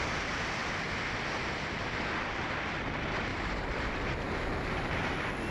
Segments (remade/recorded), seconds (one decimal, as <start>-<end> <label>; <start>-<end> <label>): 0.0-3.3 recorded; 3.3-5.1 remade; 5.1-5.5 recorded